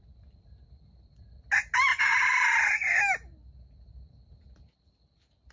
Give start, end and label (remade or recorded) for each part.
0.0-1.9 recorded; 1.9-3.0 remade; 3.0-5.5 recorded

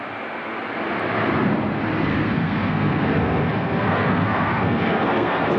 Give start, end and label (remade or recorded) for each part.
0.0-2.1 recorded; 2.1-5.6 remade

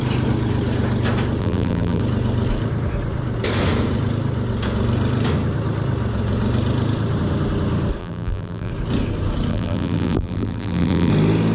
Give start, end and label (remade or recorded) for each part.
0.0-1.4 recorded; 1.4-2.0 remade; 2.0-8.0 recorded; 8.0-8.7 remade; 8.7-9.5 recorded; 9.5-11.1 remade; 11.1-11.5 recorded

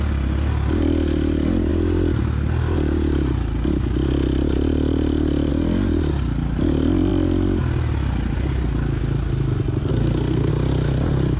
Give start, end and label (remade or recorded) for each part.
0.0-9.9 recorded; 9.9-10.5 remade; 10.5-11.4 recorded

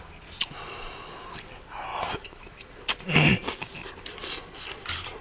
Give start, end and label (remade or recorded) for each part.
0.0-1.9 recorded; 1.9-2.8 remade; 2.8-5.2 recorded